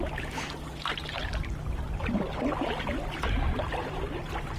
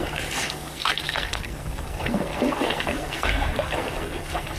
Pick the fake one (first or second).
second